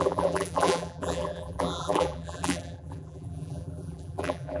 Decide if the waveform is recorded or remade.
remade